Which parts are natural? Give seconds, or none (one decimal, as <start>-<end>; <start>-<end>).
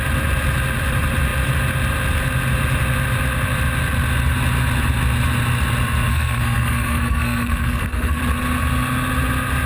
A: 0.0-6.1; 8.2-9.7